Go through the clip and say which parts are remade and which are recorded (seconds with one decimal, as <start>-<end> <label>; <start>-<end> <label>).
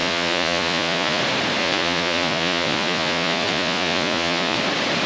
0.0-1.2 remade; 1.2-1.6 recorded; 1.6-4.6 remade; 4.6-5.1 recorded